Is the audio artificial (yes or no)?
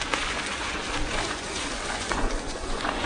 yes